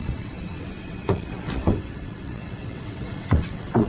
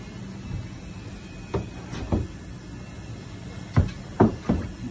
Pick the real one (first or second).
second